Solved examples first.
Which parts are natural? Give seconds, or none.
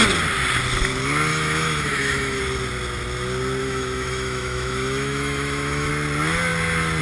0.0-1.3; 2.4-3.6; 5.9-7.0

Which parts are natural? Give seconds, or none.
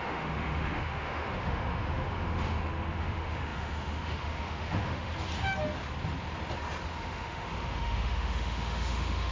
5.1-7.0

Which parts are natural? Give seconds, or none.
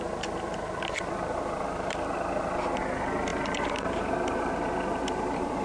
0.0-5.6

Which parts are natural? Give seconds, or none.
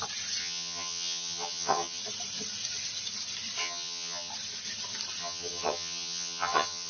0.0-0.4; 2.0-3.6; 4.3-5.2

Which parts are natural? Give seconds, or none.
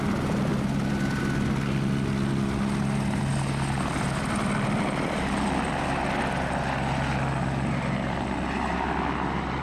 0.0-9.6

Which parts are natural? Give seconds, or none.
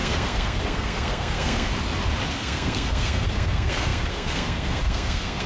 1.7-2.3